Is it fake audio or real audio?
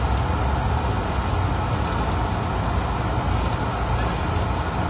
real